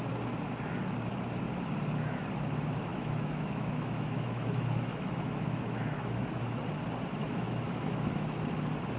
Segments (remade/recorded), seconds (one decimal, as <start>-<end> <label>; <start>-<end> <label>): 0.0-2.9 recorded; 2.9-6.6 remade; 6.6-7.2 recorded; 7.2-8.4 remade; 8.4-9.0 recorded